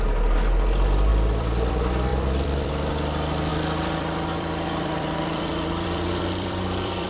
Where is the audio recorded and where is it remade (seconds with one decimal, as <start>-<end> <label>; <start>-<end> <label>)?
0.0-1.1 recorded; 1.1-1.7 remade; 1.7-2.1 recorded; 2.1-2.7 remade; 2.7-3.5 recorded; 3.5-7.1 remade